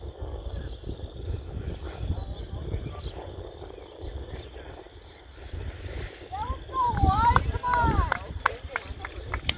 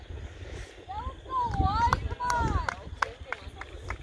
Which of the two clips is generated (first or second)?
first